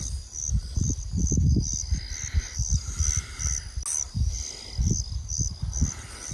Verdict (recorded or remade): recorded